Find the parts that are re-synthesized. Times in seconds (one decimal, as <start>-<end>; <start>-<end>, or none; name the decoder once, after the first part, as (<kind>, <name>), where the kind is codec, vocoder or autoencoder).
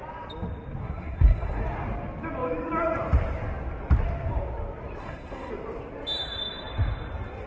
0.8-1.6 (codec, SNAC); 5.0-5.5